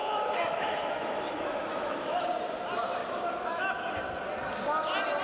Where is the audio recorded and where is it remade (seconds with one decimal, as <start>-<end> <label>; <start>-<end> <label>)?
0.0-2.2 remade; 2.2-3.0 recorded; 3.0-3.9 remade; 3.9-5.2 recorded